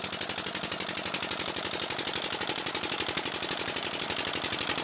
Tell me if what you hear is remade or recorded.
recorded